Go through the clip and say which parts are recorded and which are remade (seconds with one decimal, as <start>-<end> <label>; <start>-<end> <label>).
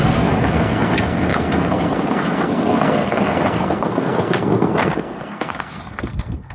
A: 0.0-6.5 remade